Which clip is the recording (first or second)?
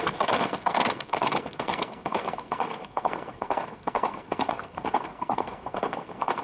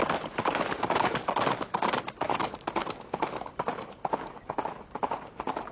second